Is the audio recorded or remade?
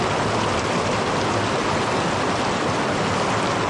recorded